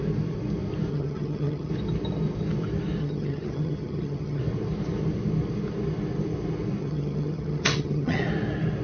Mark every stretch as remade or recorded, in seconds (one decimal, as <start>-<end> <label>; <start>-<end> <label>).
0.0-0.9 recorded; 0.9-1.7 remade; 1.7-3.0 recorded; 3.0-4.4 remade; 4.4-6.8 recorded; 6.8-8.2 remade; 8.2-8.8 recorded